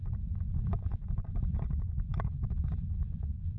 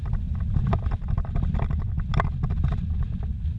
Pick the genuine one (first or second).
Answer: second